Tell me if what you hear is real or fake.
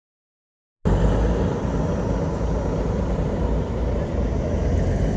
real